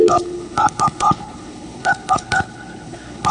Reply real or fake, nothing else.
fake